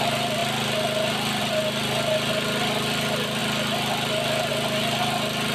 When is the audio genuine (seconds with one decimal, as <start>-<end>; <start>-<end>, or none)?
0.0-5.5